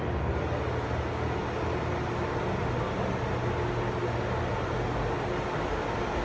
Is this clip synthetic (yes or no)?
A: no